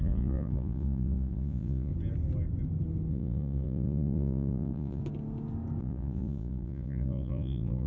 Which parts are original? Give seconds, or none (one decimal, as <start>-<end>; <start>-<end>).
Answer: 1.9-3.1; 5.0-5.8